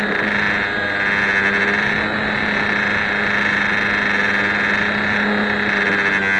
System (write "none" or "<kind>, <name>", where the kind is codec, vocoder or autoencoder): none